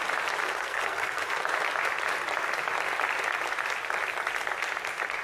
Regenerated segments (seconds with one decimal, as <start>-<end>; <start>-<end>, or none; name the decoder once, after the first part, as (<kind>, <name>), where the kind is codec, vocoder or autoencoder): 0.4-1.4 (codec, SNAC)